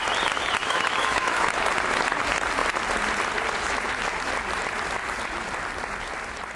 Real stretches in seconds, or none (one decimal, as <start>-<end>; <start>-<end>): 0.0-0.6; 1.5-6.6